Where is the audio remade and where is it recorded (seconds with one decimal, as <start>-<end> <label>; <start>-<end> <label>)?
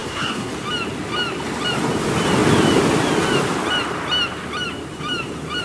0.0-0.5 remade; 0.5-5.6 recorded